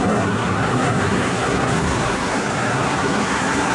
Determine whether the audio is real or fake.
fake